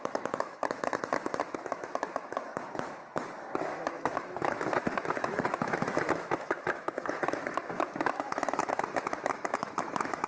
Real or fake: fake